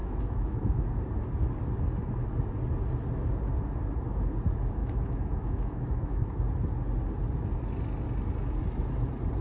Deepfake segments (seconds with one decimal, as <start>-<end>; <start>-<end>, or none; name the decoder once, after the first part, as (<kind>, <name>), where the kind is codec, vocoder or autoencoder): 0.0-0.8 (autoencoder, DAC-VAE); 4.8-6.3